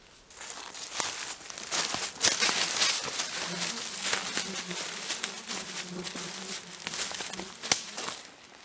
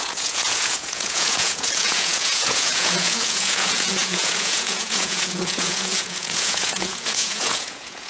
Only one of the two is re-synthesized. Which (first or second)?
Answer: second